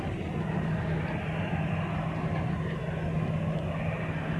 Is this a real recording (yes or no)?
yes